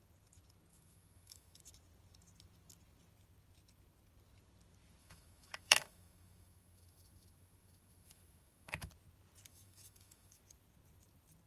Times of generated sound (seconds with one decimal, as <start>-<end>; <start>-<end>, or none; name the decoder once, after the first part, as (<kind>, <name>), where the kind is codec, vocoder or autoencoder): 0.7-1.6 (autoencoder, DAC-VAE); 5.0-8.9; 9.5-10.4